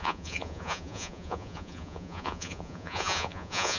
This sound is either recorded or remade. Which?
remade